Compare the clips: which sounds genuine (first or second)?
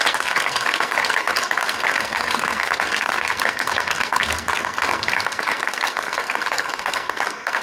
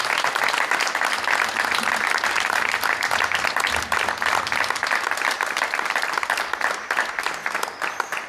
second